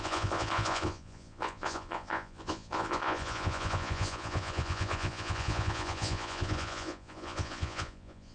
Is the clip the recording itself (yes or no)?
no